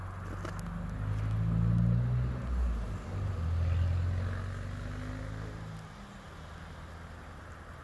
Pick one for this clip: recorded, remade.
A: recorded